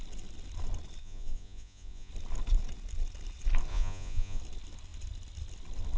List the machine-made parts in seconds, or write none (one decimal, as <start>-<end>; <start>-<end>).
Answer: 1.0-2.1; 3.7-4.4

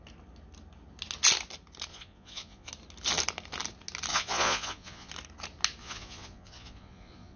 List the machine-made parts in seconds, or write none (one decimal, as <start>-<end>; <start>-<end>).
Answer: 1.9-2.7; 4.1-5.1; 5.8-7.4